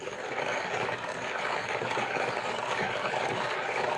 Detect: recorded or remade remade